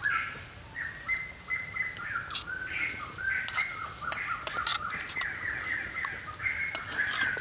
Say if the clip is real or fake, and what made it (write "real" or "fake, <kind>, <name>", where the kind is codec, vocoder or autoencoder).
real